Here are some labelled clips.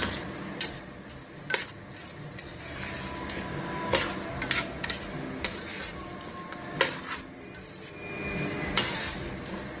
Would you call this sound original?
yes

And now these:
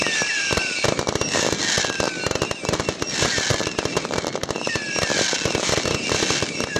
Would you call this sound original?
yes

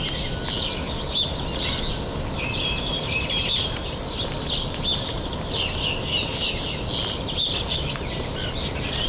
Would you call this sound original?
yes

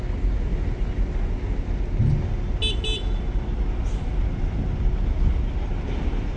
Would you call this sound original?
yes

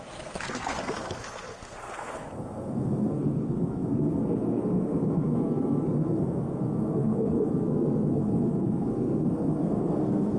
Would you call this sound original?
no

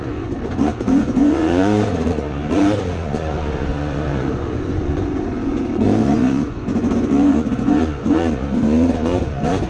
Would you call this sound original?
no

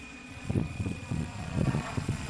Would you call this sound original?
no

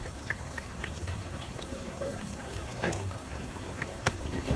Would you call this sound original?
no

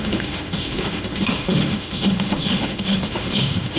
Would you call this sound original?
no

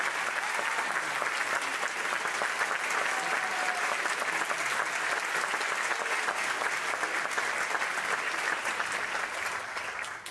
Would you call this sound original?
yes